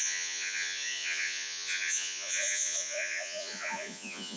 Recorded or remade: remade